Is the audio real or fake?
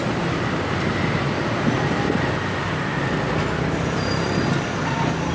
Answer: real